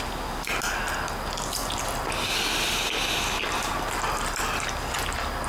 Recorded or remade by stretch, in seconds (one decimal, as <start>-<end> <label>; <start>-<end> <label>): 0.0-5.5 recorded